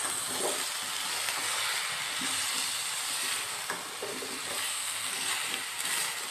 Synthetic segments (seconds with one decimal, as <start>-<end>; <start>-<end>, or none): 4.7-5.3